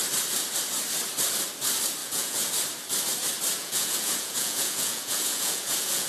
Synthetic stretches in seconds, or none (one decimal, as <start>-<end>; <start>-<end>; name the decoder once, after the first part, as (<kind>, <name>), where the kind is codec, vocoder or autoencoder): 2.0-2.5 (vocoder, Vocos); 3.6-6.1